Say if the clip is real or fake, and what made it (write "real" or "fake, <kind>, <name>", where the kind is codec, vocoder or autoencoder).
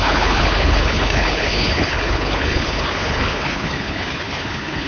fake, codec, HILCodec